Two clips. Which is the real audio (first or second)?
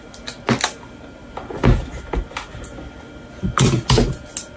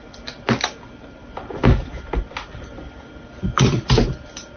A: first